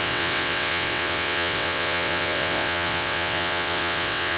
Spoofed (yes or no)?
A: yes